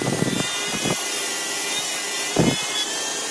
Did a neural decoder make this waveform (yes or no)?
no